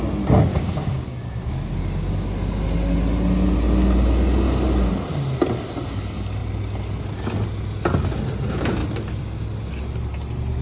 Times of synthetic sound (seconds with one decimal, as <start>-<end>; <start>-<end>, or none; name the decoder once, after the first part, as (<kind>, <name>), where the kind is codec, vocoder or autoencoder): 0.5-2.1 (codec, DAC)